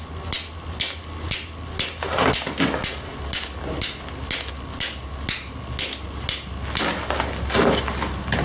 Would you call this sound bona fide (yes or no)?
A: yes